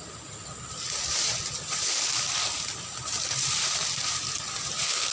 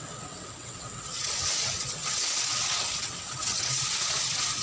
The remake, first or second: second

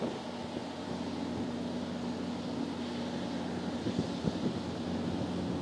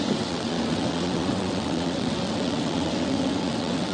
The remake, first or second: second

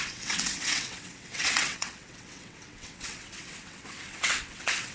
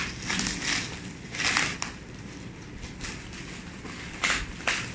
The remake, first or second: first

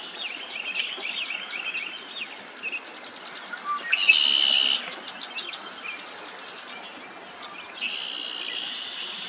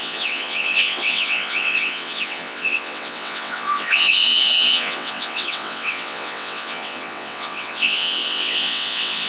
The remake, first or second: second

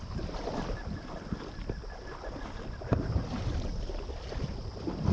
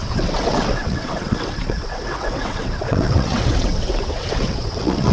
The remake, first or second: second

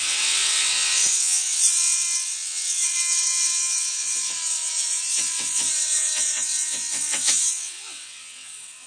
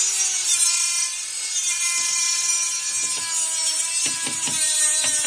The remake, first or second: first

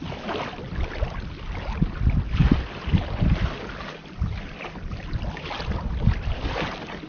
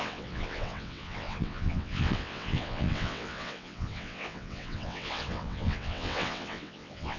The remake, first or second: second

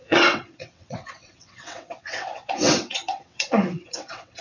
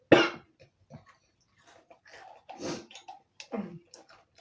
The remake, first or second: first